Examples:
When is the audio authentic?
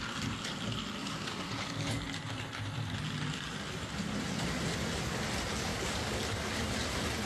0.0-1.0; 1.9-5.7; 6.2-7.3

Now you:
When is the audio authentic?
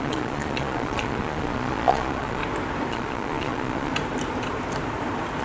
2.4-2.9; 3.9-5.4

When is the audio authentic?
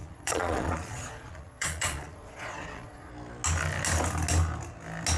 3.1-5.2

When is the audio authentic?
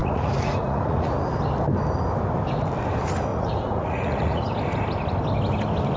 1.4-3.3; 4.5-6.0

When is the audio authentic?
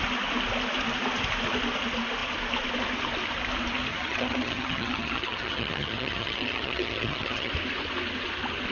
0.0-3.9; 7.5-8.7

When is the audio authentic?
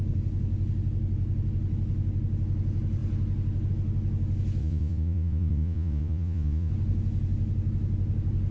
0.0-4.6; 6.7-8.5